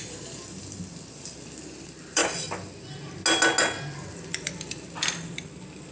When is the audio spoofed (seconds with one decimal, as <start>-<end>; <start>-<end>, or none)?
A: 0.0-2.2; 4.1-5.9